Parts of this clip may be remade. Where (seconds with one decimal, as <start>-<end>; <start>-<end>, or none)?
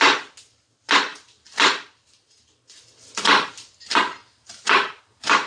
1.1-2.8; 4.2-5.0